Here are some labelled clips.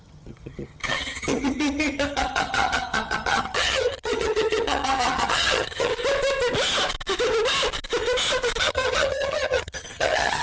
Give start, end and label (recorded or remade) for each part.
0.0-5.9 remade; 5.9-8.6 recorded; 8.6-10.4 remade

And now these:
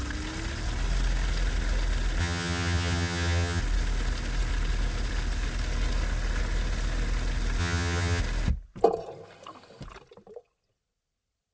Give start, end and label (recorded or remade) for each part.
0.0-2.2 recorded; 2.2-3.6 remade; 3.6-7.6 recorded; 7.6-8.2 remade; 8.2-11.5 recorded

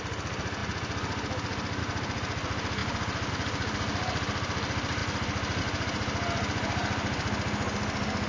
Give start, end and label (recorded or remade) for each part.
0.0-8.3 recorded

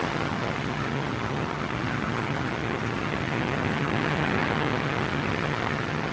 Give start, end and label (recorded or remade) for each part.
0.0-6.1 remade

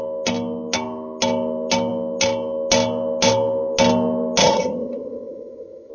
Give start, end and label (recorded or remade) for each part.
0.0-4.4 recorded; 4.4-5.9 remade